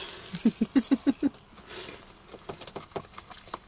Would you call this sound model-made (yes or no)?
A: no